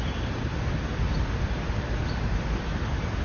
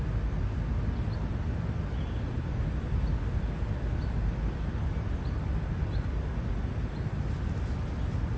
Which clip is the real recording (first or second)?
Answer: second